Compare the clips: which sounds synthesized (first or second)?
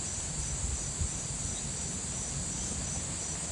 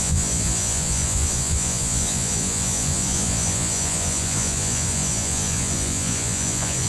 second